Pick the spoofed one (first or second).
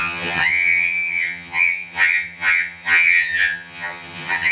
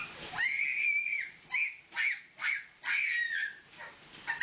first